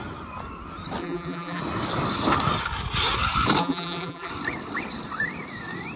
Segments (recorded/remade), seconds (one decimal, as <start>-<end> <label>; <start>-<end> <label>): 0.0-1.0 recorded; 1.0-1.6 remade; 1.6-3.6 recorded; 3.6-4.3 remade; 4.3-6.0 recorded